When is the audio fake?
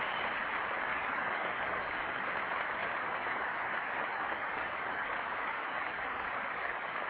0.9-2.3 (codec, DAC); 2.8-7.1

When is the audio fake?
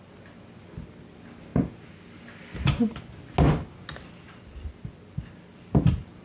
none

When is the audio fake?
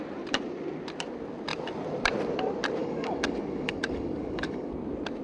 2.8-4.7 (codec, DAC)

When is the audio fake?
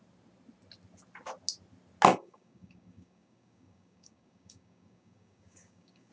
2.1-6.1 (codec, DAC)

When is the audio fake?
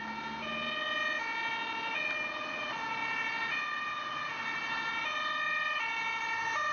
none